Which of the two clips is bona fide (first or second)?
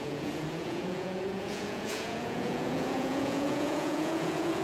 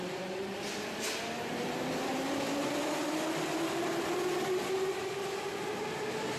second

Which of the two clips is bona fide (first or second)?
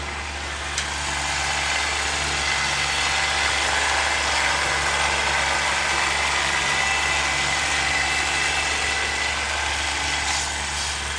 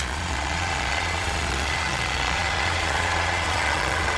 first